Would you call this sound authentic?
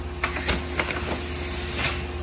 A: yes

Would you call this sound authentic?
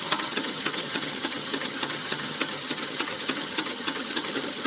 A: no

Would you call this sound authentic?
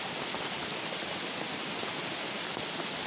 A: yes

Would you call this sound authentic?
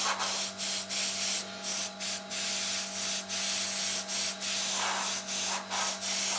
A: yes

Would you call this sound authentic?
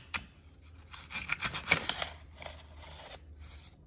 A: yes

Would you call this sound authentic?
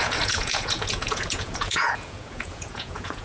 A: no